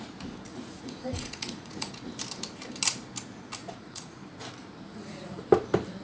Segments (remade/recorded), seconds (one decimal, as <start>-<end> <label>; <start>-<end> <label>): 0.0-0.5 recorded; 0.5-1.9 remade; 1.9-3.6 recorded; 3.6-4.2 remade; 4.2-4.9 recorded; 4.9-5.4 remade; 5.4-6.0 recorded